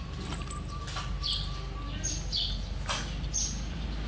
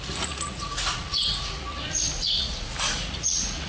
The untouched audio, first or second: first